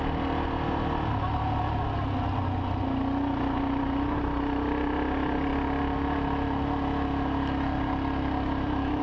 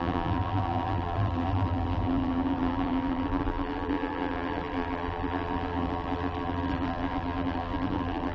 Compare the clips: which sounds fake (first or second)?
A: second